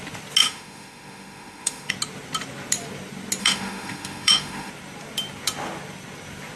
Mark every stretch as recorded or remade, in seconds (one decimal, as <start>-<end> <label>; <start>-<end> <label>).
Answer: 0.0-0.4 recorded; 0.4-1.9 remade; 1.9-3.4 recorded; 3.4-4.7 remade; 4.7-6.6 recorded